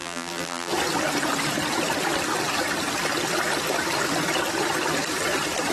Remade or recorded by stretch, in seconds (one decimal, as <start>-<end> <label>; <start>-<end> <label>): 0.0-0.7 remade; 0.7-5.7 recorded